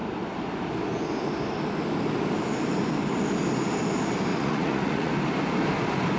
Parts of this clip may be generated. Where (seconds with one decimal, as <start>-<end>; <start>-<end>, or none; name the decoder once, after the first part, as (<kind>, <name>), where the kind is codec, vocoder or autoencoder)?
4.3-5.1 (vocoder, Vocos)